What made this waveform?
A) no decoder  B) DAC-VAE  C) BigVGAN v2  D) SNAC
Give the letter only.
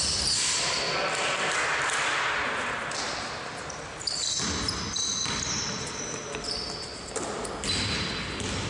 A